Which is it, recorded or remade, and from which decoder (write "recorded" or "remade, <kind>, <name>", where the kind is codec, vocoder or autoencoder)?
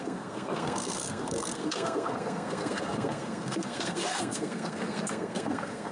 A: remade, codec, SNAC